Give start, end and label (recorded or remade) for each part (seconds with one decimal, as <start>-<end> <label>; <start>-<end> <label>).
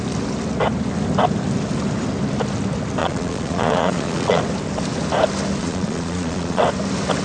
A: 0.0-3.0 recorded; 3.0-4.4 remade; 4.4-5.6 recorded; 5.6-6.6 remade; 6.6-7.2 recorded